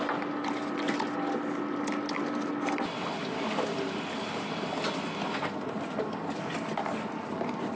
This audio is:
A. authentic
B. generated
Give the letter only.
A